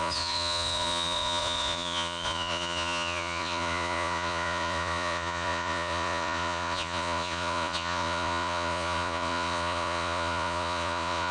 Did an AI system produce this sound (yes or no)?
yes